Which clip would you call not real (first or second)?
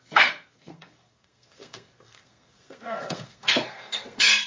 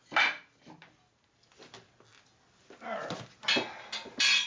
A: first